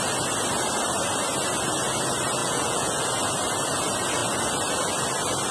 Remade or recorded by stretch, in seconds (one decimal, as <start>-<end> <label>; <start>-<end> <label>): 0.0-2.4 recorded; 2.4-3.0 remade; 3.0-5.5 recorded